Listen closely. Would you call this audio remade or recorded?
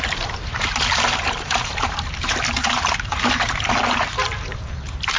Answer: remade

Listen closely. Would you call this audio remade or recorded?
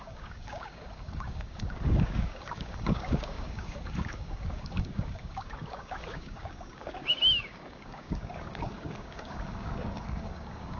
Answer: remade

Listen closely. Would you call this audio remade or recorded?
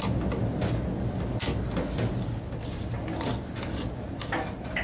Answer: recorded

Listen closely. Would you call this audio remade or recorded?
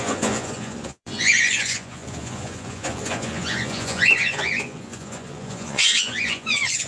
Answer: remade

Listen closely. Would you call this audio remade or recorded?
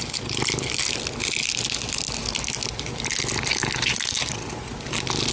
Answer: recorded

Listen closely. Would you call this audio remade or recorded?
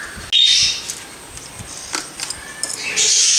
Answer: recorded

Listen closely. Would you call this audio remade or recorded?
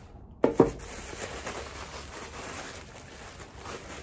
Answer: recorded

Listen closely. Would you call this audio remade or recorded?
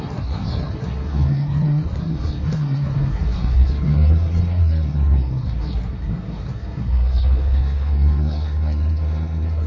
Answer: remade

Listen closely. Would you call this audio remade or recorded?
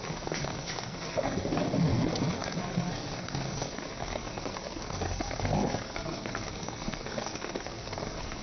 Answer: remade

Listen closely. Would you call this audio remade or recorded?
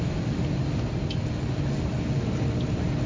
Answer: recorded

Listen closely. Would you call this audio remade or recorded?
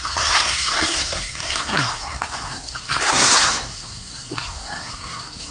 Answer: remade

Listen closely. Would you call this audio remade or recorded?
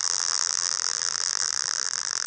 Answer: remade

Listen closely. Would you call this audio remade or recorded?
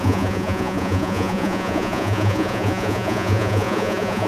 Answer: remade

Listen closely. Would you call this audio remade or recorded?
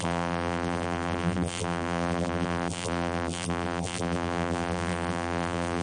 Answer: remade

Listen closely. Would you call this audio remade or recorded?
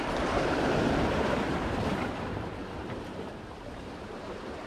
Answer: remade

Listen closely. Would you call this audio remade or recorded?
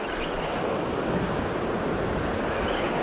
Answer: recorded